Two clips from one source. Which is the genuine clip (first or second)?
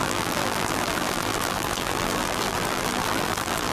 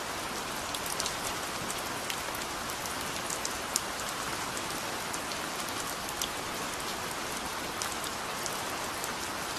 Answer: second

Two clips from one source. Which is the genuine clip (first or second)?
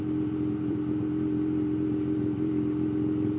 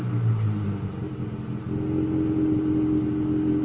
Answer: second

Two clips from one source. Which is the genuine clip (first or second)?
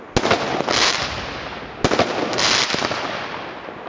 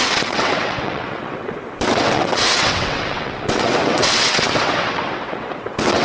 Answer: first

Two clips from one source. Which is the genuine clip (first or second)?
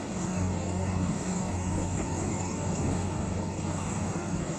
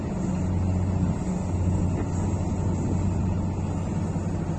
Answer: second